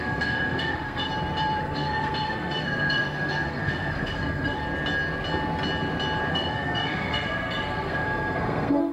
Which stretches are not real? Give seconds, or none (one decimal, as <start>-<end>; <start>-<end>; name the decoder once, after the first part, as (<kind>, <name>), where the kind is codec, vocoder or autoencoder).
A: 0.0-1.1 (codec, SNAC); 1.6-4.6; 6.3-8.9